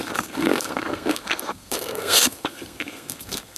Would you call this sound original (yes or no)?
no